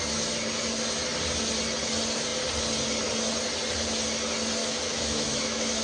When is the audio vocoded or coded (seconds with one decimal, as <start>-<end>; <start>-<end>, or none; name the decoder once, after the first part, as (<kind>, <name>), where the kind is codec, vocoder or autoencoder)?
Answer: 4.6-5.8 (autoencoder, DAC-VAE)